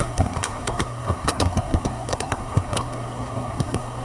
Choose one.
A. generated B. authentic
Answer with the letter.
A